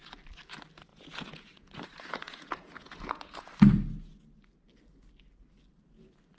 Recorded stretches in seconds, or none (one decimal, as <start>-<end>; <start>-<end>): 0.0-0.9; 3.5-6.4